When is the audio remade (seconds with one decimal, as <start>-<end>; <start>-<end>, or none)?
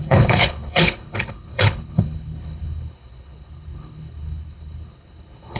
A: 0.0-5.6